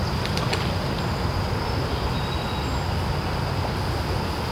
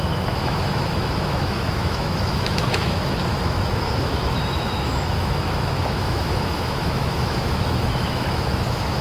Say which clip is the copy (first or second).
second